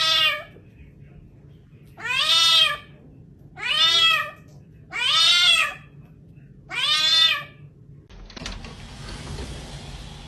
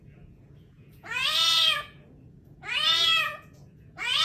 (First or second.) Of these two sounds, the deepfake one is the second